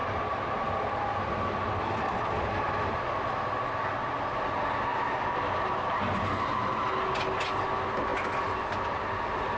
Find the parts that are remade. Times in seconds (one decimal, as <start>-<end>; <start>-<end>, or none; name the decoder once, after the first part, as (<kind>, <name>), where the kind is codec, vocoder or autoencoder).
none